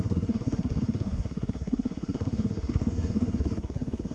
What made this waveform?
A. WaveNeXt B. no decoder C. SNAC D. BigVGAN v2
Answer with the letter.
C